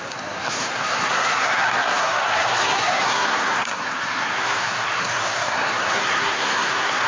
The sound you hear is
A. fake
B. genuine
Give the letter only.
A